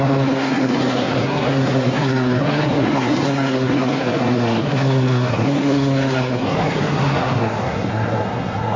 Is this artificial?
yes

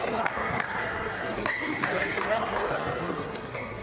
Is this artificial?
yes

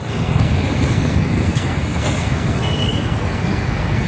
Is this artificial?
yes